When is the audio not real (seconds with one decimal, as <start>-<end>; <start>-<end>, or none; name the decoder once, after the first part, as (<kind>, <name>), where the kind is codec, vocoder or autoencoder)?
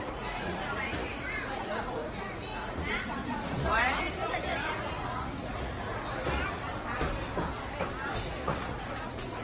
0.0-6.7 (vocoder, Vocos); 8.2-9.4